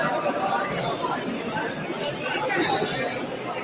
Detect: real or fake real